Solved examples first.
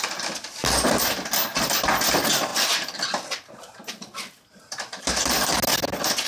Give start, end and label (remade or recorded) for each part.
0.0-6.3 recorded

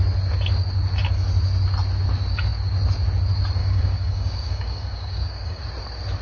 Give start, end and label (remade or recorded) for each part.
0.0-3.6 recorded; 3.6-5.6 remade; 5.6-6.2 recorded

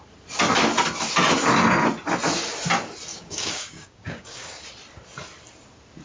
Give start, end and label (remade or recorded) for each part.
0.0-3.1 recorded; 3.1-4.6 remade; 4.6-6.0 recorded

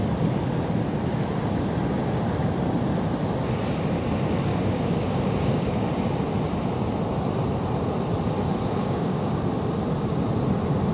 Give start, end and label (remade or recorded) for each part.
0.0-4.5 recorded; 4.5-5.8 remade; 5.8-8.8 recorded; 8.8-9.6 remade; 9.6-10.9 recorded

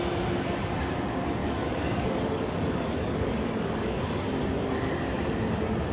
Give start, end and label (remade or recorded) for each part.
0.0-1.4 recorded; 1.4-4.0 remade; 4.0-5.9 recorded